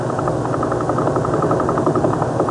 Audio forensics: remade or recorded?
recorded